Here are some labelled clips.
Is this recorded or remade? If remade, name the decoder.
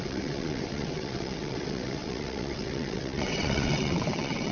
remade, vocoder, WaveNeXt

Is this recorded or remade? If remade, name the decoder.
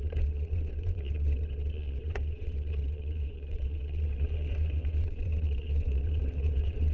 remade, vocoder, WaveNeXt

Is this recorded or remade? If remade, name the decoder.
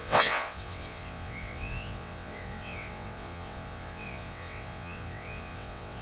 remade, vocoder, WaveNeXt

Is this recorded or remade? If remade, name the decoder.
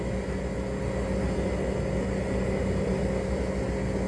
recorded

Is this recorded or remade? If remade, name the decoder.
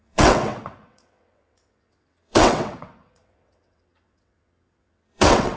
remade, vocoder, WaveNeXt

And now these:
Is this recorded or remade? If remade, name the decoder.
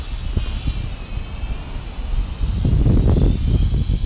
recorded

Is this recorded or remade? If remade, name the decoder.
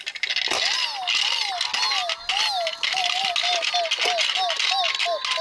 recorded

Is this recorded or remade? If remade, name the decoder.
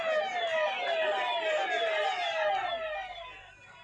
recorded